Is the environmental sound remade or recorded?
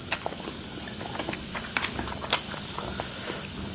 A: recorded